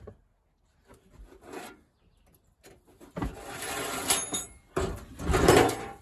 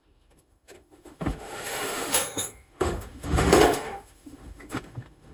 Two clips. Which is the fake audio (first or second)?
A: second